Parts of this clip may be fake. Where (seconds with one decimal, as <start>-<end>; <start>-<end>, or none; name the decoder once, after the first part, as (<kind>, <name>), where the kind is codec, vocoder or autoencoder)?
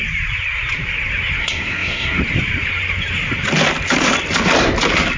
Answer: 1.4-2.2 (codec, SNAC)